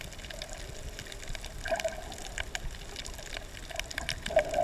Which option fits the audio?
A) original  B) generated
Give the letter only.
A